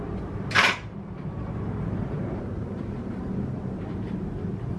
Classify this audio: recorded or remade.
remade